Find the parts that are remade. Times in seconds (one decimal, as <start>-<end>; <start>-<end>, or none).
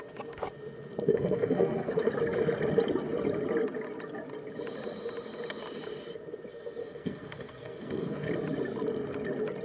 1.1-2.1; 6.8-8.3